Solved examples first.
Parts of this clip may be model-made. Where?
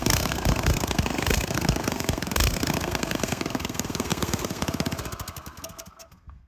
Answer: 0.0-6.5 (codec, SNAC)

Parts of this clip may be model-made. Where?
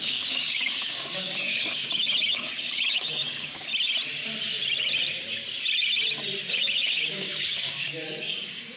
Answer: 0.0-3.7 (codec, DAC); 6.5-8.8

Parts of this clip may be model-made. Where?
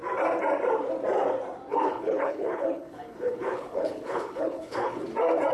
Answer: 1.7-5.0 (codec, HILCodec)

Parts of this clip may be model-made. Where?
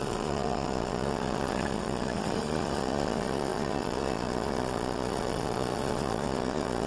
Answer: 0.0-6.9 (vocoder, Vocos)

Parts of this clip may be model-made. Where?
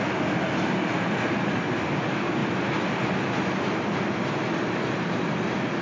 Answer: none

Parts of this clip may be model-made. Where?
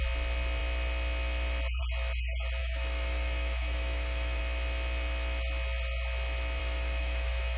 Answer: 2.6-4.4 (autoencoder, DAC-VAE); 6.6-7.6